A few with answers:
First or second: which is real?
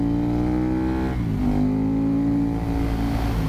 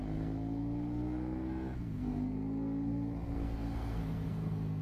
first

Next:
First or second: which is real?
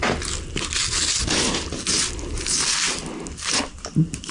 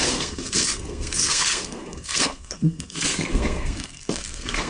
first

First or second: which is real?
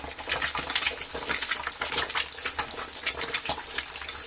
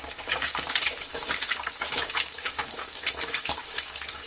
first